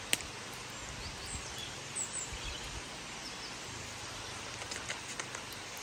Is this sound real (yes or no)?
yes